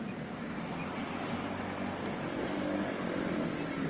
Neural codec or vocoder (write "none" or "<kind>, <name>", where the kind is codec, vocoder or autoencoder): none